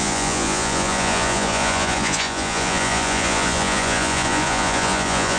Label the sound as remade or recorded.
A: remade